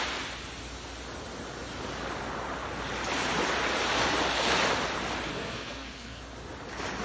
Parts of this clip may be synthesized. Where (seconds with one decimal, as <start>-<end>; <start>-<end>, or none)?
5.3-6.2